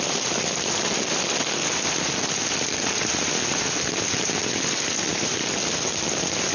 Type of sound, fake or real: real